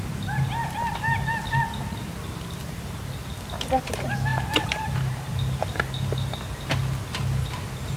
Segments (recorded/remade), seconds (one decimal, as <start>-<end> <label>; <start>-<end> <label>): 0.0-4.3 recorded; 4.3-5.3 remade; 5.3-8.0 recorded